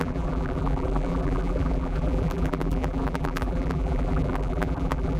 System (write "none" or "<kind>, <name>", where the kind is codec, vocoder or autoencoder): vocoder, BigVGAN v2